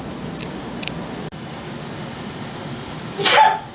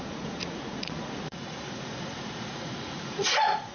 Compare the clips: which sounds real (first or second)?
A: first